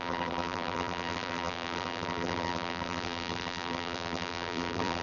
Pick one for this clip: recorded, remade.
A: remade